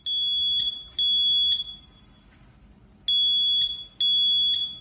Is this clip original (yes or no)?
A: yes